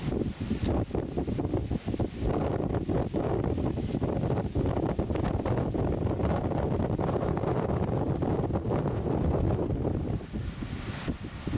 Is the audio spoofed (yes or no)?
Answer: no